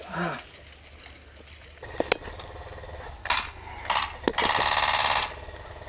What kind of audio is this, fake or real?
real